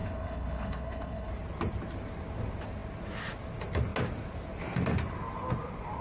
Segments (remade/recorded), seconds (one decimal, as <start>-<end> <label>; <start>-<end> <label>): 0.0-1.3 remade; 1.3-6.0 recorded